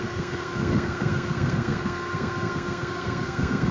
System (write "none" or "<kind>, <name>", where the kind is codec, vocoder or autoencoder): codec, SNAC